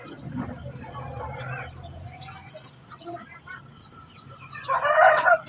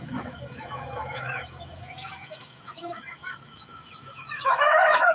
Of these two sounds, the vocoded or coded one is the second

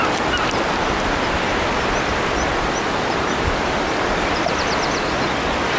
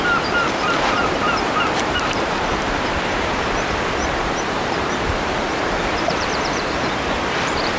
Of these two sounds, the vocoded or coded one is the second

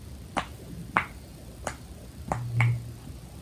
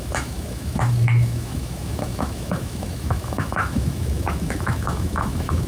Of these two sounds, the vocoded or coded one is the second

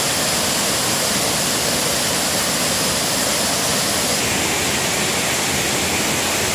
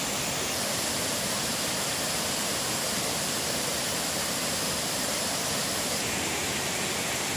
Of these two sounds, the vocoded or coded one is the second